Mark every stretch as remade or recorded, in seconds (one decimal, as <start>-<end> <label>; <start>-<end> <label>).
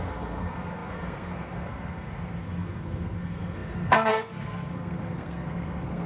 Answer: 0.0-6.1 remade